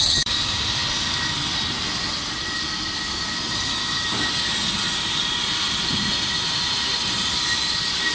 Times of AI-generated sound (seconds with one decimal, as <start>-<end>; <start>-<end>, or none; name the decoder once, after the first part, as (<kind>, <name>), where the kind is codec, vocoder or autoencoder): 0.0-0.8 (vocoder, BigVGAN v2); 5.7-8.1